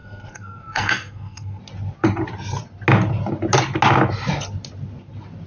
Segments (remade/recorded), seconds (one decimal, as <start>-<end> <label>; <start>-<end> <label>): 0.0-1.6 remade; 1.6-5.5 recorded